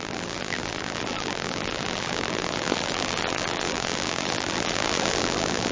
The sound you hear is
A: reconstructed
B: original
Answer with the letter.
A